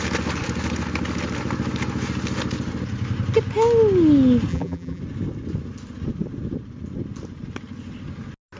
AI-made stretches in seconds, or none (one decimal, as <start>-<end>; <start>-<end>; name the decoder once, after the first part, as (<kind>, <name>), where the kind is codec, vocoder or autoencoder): 4.5-5.0 (vocoder, BigVGAN v2)